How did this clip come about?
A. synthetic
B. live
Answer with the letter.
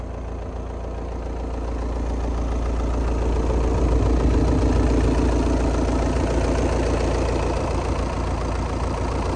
B